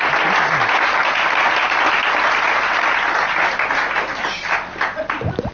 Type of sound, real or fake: real